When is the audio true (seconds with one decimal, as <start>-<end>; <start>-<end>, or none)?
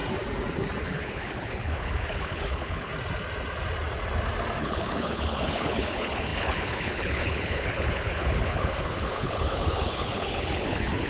0.0-0.8; 2.9-4.6